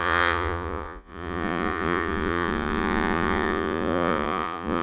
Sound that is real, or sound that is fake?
fake